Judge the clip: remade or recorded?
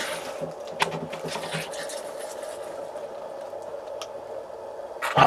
recorded